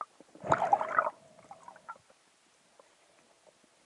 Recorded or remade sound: recorded